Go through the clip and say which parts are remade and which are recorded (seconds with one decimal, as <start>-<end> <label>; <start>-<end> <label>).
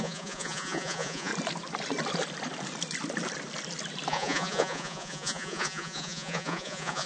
0.0-1.3 remade; 1.3-4.1 recorded; 4.1-7.1 remade